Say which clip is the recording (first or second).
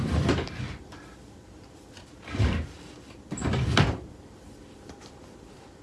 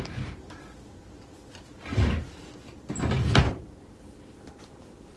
second